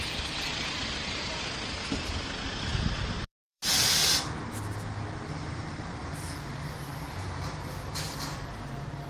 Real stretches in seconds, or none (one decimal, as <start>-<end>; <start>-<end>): 3.7-5.3